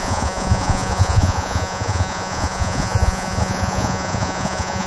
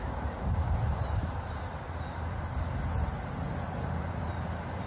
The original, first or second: second